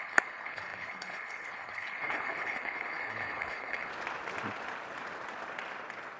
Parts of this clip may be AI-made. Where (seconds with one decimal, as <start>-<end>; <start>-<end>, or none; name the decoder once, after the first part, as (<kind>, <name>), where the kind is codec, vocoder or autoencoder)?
0.0-3.9 (codec, HILCodec)